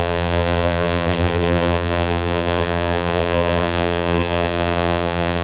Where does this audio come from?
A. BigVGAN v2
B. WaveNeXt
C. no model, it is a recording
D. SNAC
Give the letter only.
A